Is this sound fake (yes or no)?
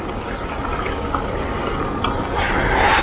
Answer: no